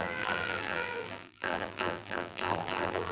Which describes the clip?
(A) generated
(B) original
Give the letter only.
A